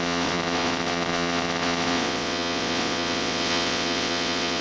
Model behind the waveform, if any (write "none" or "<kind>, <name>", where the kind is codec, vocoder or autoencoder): vocoder, WaveNeXt